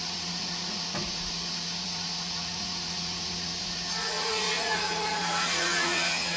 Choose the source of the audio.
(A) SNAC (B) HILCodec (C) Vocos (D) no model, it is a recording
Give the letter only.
C